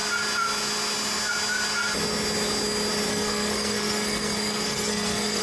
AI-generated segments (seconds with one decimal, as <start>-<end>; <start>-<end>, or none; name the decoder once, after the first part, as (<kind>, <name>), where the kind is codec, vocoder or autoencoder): 3.1-5.4 (codec, SNAC)